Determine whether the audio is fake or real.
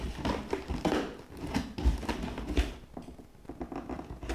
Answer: real